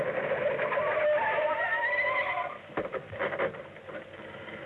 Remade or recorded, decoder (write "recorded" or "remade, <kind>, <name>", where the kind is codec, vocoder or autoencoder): recorded